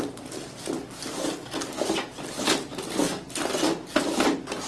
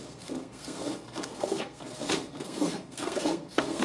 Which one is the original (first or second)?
first